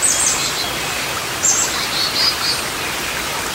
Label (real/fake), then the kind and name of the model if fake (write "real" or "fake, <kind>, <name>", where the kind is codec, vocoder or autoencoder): real